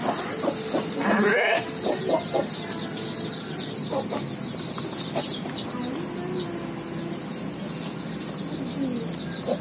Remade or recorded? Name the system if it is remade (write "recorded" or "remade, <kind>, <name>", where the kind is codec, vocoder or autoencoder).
recorded